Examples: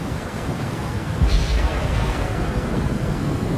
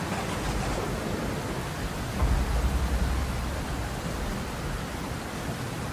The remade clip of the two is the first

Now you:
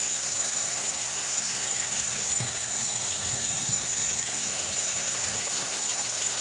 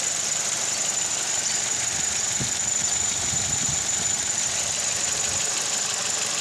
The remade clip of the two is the first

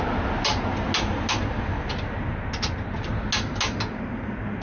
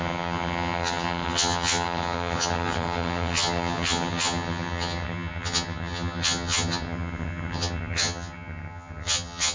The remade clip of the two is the second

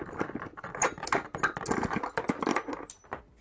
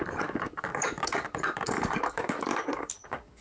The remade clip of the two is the second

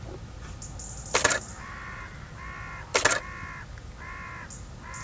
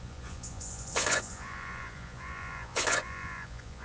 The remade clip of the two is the second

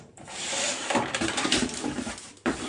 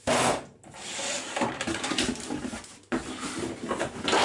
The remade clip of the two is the first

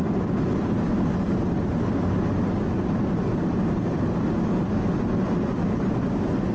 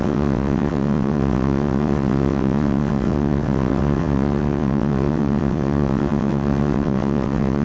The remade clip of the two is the second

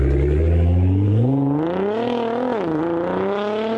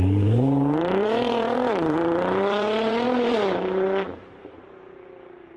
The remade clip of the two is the second